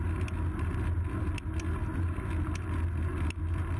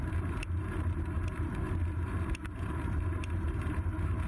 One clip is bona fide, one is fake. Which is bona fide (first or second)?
first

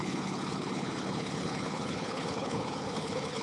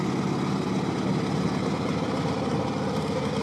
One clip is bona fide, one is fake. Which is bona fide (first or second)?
second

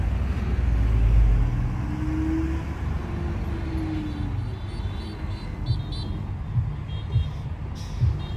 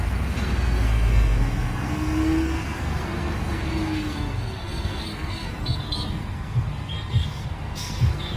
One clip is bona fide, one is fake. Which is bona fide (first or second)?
first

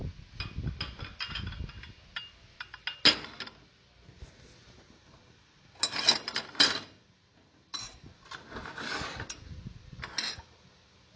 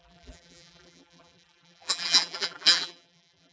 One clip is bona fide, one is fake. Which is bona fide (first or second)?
first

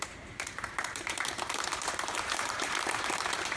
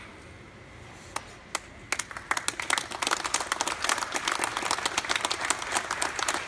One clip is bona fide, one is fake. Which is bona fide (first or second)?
second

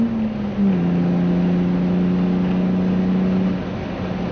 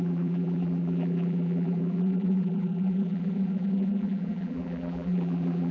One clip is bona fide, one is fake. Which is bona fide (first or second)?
first